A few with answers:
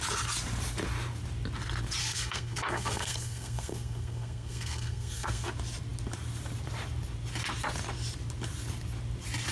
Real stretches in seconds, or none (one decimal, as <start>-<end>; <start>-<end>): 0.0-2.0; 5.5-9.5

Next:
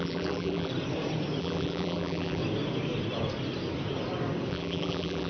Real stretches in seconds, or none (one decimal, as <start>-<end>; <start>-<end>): 0.7-1.4; 2.4-4.5

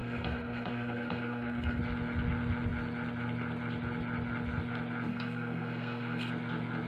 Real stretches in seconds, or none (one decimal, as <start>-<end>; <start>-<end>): 1.8-5.1; 6.3-6.9

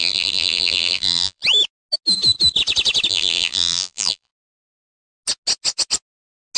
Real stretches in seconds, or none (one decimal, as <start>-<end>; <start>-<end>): 1.4-3.1; 4.3-6.6

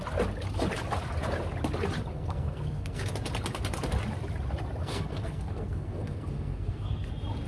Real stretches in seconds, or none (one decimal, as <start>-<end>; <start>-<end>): 0.0-2.1; 3.1-4.8; 7.1-7.5

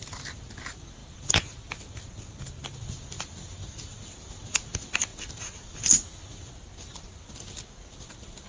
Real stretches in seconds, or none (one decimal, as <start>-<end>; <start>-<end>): 0.0-8.5

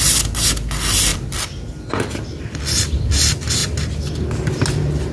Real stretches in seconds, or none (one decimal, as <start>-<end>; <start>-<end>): 0.0-5.1

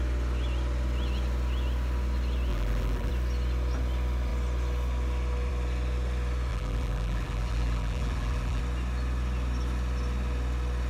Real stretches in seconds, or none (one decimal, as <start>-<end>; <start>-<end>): 0.0-2.5; 3.1-6.5; 8.6-10.9